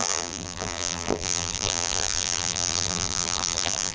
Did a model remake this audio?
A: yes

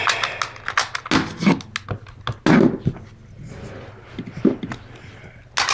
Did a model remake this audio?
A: no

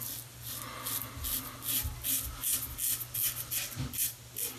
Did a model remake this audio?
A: no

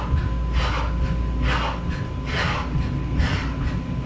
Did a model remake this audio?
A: no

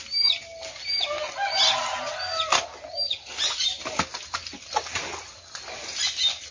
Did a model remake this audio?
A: no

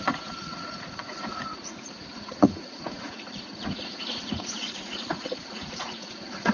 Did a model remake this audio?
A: yes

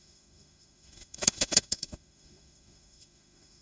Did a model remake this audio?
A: yes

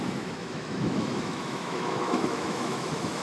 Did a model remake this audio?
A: yes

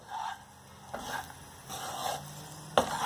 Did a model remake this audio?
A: no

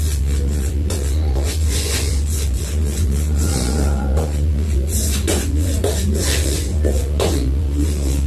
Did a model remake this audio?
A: yes